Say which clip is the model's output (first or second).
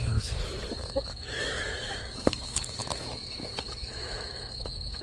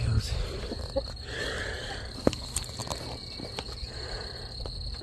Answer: first